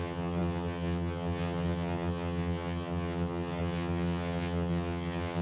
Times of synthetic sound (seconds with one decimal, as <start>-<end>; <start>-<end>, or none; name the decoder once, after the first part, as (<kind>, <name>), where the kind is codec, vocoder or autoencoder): 0.0-5.4 (vocoder, HiFi-GAN)